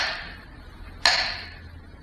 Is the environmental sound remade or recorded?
recorded